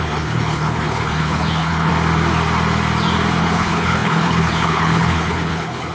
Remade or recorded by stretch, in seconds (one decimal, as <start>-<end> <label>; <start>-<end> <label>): 0.0-1.9 remade; 1.9-3.4 recorded; 3.4-5.9 remade